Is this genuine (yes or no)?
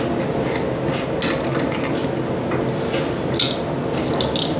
yes